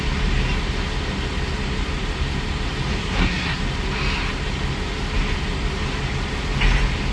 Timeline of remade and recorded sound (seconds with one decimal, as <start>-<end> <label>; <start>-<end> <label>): 0.0-3.0 recorded; 3.0-3.6 remade; 3.6-7.1 recorded